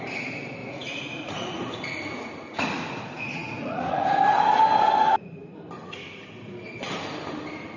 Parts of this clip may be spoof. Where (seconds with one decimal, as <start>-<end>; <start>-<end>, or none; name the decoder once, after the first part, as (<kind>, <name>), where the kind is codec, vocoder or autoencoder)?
0.6-1.6 (vocoder, Vocos); 2.5-4.2